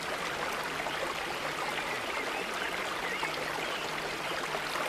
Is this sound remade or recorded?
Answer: recorded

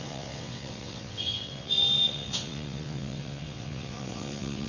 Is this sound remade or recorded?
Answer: remade